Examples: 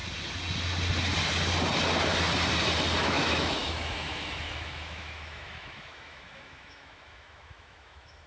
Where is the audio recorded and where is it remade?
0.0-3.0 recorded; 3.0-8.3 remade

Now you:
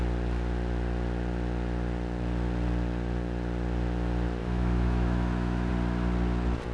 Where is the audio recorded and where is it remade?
0.0-4.4 recorded; 4.4-5.7 remade; 5.7-6.7 recorded

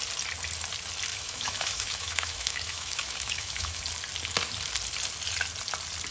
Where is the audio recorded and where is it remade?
0.0-1.1 recorded; 1.1-3.8 remade; 3.8-6.1 recorded

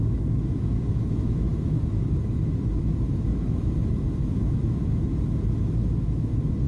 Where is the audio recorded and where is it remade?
0.0-6.7 remade